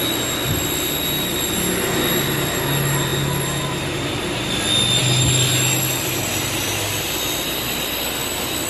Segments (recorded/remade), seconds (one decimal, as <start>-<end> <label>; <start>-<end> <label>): 0.0-8.7 recorded